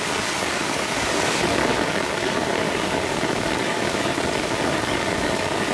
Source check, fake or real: fake